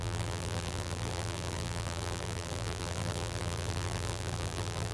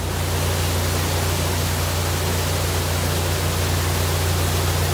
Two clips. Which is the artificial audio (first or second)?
first